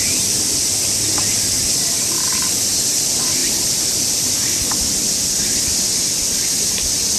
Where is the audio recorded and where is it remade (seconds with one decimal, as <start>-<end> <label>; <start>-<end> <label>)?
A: 0.0-7.2 recorded